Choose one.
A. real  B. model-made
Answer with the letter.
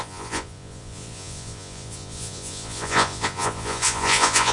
B